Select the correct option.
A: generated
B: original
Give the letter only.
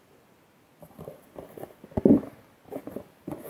B